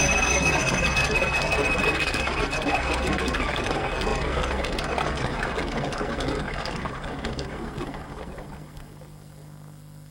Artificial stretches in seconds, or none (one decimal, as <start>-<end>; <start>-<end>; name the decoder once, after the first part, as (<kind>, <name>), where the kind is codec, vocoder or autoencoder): 0.0-10.1 (codec, SNAC)